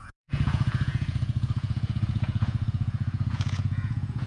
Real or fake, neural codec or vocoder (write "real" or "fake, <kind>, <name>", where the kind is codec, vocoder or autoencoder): fake, vocoder, Vocos